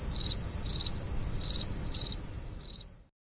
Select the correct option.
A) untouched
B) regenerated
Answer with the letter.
A